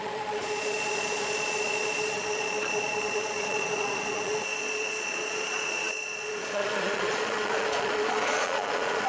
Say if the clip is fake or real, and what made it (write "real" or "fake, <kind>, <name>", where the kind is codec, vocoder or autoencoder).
fake, vocoder, Vocos